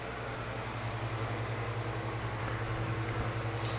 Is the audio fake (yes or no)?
no